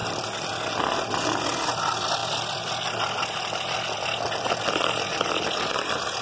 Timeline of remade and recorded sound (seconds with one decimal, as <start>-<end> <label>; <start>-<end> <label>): 0.0-6.2 recorded